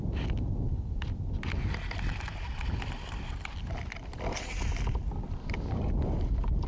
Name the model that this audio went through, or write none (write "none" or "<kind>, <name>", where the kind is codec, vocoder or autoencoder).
none